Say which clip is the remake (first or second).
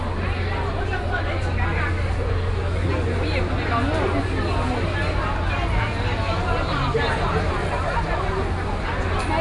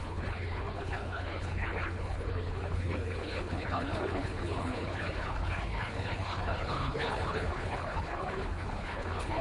second